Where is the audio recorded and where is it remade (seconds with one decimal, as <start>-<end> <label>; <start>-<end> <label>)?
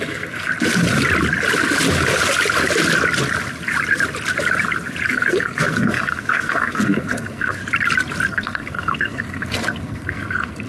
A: 0.0-0.5 remade; 0.5-5.1 recorded; 5.1-7.6 remade; 7.6-8.3 recorded; 8.3-10.7 remade